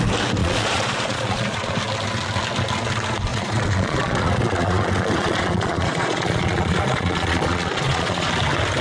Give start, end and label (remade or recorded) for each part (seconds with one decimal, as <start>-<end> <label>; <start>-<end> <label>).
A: 0.0-0.4 recorded; 0.4-1.7 remade; 1.7-3.3 recorded; 3.3-8.3 remade; 8.3-8.8 recorded